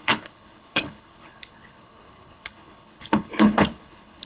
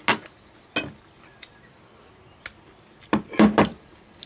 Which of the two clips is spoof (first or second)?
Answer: first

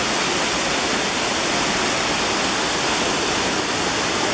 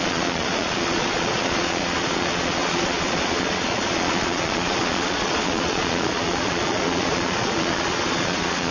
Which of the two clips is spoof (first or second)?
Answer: second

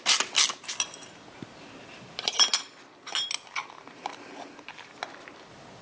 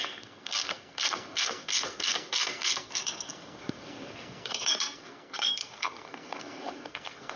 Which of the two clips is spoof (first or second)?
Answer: second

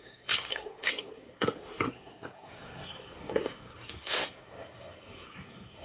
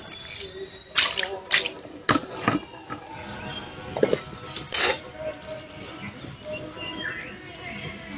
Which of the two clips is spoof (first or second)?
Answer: first